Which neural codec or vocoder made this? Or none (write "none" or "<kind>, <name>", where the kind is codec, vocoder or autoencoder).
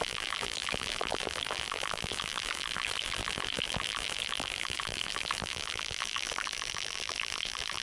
vocoder, BigVGAN v2